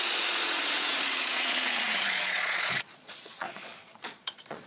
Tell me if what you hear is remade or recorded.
remade